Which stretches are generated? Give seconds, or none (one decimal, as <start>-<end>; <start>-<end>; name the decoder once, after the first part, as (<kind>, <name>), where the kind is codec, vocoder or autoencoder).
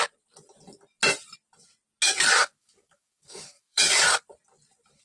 2.4-4.2 (codec, DAC)